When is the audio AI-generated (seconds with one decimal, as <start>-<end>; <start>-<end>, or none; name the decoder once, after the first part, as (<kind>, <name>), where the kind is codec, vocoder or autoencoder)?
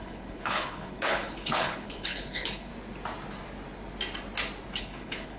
0.0-2.7 (codec, HILCodec); 4.8-5.4